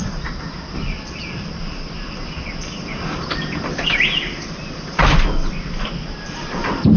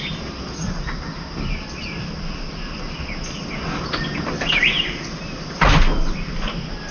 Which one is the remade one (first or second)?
first